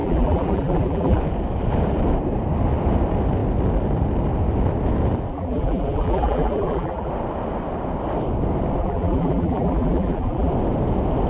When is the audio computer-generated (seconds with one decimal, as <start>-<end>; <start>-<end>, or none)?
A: 0.0-1.2; 5.3-7.1; 8.8-10.5